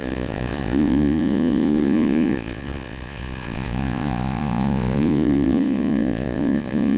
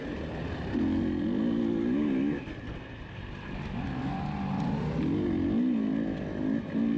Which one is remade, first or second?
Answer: first